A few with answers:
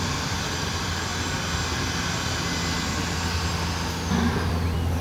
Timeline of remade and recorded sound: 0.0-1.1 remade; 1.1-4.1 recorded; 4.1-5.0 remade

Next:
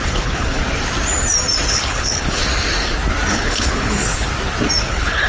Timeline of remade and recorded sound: 0.0-0.6 remade; 0.6-1.7 recorded; 1.7-2.4 remade; 2.4-3.3 recorded; 3.3-4.3 remade; 4.3-4.8 recorded; 4.8-5.3 remade

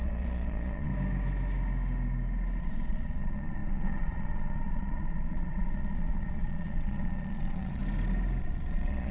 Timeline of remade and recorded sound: 0.0-0.9 remade; 0.9-2.6 recorded; 2.6-7.8 remade; 7.8-8.4 recorded; 8.4-9.1 remade

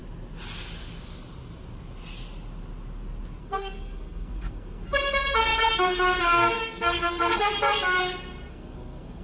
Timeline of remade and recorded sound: 0.0-3.4 recorded; 3.4-7.5 remade; 7.5-8.5 recorded; 8.5-9.2 remade

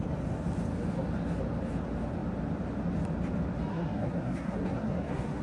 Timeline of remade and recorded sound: 0.0-3.7 recorded; 3.7-5.4 remade

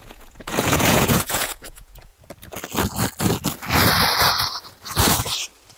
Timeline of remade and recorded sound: 0.0-2.1 remade; 2.1-5.8 recorded